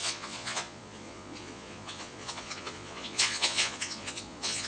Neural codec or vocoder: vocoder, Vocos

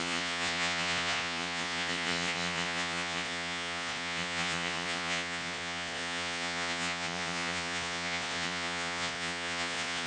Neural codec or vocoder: vocoder, Vocos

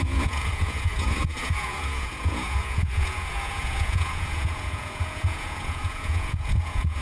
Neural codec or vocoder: vocoder, Vocos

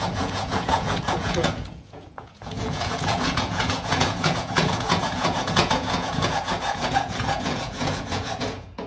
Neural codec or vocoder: vocoder, Vocos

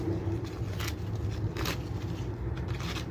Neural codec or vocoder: none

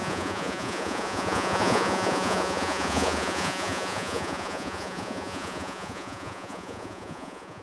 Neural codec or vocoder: vocoder, Vocos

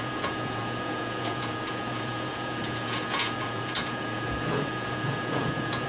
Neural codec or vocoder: vocoder, Vocos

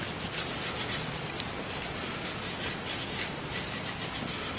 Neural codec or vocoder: none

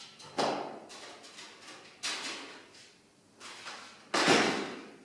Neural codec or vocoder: none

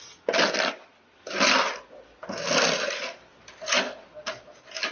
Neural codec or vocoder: none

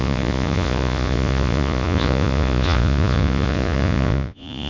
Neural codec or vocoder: vocoder, Vocos